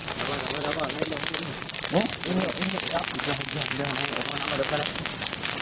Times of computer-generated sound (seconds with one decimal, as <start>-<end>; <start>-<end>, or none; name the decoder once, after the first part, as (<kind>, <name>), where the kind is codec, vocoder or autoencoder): 0.0-1.9 (vocoder, BigVGAN v2); 4.3-5.1

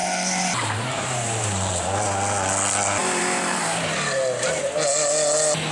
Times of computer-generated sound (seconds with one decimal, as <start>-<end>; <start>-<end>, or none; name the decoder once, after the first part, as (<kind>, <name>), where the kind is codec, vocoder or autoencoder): 0.0-1.7 (vocoder, BigVGAN v2); 3.0-3.6

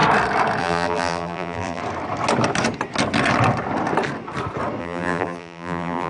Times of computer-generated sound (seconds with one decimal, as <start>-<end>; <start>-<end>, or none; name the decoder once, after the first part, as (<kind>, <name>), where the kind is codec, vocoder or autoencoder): 0.6-1.8 (vocoder, BigVGAN v2); 4.8-6.1

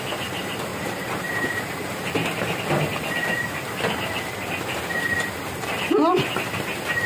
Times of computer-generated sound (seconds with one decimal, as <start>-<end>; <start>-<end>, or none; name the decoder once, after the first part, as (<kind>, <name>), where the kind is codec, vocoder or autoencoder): 0.7-1.2 (vocoder, BigVGAN v2)

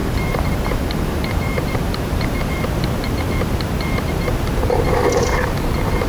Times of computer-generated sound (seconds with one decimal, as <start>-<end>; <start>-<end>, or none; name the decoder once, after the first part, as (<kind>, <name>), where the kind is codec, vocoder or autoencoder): 0.0-2.5 (vocoder, BigVGAN v2)